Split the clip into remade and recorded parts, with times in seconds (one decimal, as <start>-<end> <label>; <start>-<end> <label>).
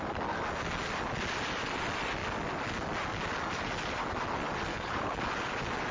0.0-4.7 recorded; 4.7-5.2 remade; 5.2-5.9 recorded